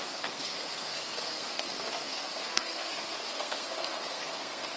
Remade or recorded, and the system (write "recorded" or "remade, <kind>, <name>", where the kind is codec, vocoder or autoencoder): remade, codec, SNAC